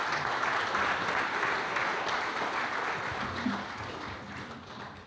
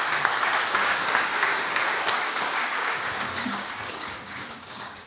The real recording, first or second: first